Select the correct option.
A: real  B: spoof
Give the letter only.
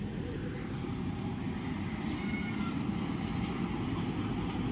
A